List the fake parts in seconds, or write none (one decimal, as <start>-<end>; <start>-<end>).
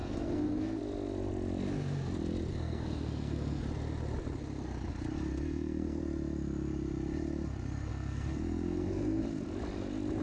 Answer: 0.0-0.8; 2.5-3.6; 5.3-6.0; 7.9-9.2